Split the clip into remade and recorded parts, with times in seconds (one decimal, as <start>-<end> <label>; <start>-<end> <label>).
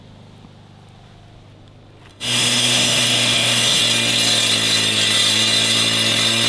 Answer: 0.0-2.1 recorded; 2.1-3.8 remade; 3.8-6.5 recorded